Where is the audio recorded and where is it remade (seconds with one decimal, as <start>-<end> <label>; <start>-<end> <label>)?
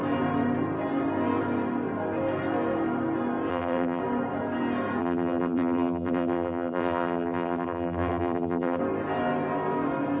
0.0-3.5 recorded; 3.5-4.0 remade; 4.0-5.0 recorded; 5.0-8.8 remade; 8.8-10.2 recorded